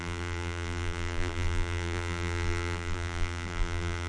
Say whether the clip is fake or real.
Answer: fake